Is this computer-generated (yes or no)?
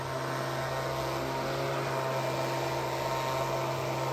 no